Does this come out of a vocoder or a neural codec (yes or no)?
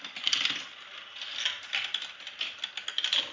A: no